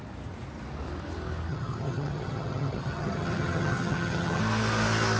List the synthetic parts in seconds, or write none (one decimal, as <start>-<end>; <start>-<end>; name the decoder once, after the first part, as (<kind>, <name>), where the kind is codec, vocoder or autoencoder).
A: 1.5-4.4 (vocoder, HiFi-GAN)